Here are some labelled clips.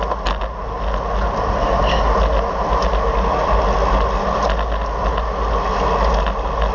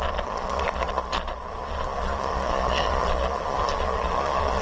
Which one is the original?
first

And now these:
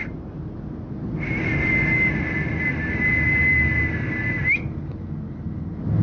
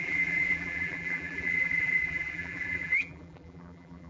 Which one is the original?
first